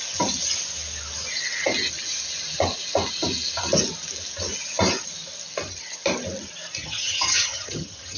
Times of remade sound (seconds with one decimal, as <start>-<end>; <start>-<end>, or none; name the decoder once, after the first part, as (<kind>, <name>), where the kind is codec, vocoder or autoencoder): 6.8-8.2 (vocoder, HiFi-GAN)